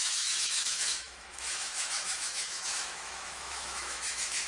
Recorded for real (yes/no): no